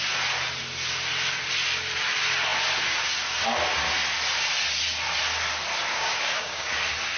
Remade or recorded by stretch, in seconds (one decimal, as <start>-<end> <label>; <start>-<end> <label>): 0.0-5.9 recorded; 5.9-6.7 remade; 6.7-7.2 recorded